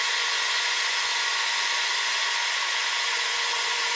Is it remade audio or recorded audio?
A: remade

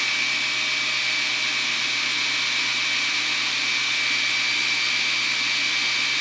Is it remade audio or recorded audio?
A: recorded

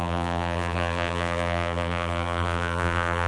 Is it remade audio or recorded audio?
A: remade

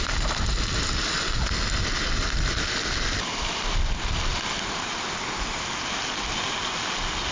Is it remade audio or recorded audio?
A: recorded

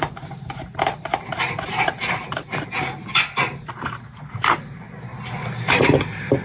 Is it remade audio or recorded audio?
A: remade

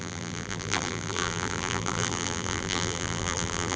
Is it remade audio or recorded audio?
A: remade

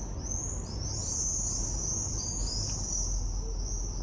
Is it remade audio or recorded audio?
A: recorded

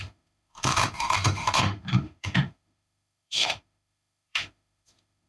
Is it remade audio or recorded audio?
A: remade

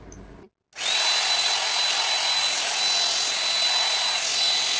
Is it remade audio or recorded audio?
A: recorded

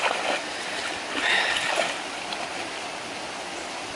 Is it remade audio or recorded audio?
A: recorded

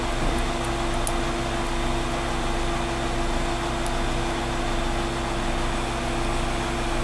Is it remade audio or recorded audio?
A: recorded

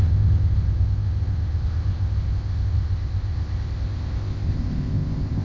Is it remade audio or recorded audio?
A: remade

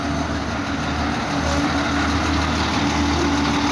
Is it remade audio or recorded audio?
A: recorded